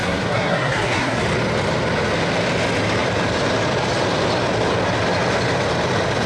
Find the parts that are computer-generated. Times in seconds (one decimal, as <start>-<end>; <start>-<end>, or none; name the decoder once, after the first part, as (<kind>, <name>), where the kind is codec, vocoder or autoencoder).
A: 0.0-1.2 (codec, SNAC)